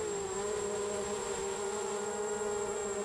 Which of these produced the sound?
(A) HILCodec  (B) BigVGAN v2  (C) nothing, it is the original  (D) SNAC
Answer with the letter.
C